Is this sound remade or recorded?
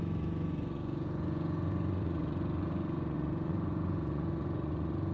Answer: remade